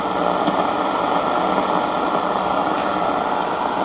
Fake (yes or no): no